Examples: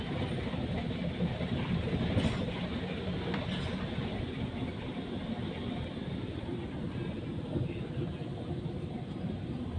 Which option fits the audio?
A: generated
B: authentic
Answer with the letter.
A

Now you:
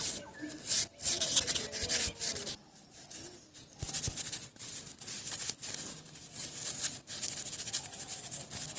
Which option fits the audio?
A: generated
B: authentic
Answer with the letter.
B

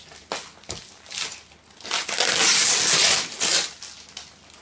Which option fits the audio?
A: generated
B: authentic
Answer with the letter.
B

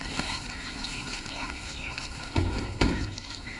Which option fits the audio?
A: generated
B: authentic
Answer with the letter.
A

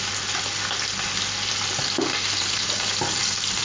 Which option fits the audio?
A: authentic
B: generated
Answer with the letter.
A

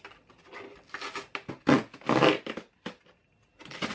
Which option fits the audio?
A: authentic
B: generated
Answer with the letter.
A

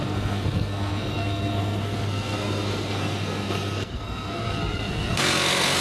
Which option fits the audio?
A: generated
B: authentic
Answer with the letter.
A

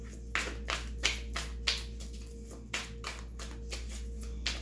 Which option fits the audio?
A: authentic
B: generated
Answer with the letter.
A